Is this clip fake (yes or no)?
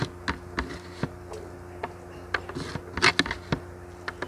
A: no